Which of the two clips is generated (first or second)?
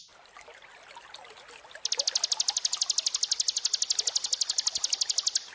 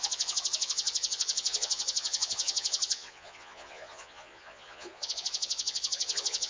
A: second